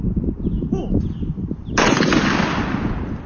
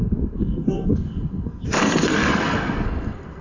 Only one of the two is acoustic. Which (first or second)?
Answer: first